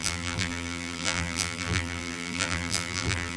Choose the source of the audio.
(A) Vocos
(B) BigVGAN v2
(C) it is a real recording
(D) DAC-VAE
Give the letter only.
B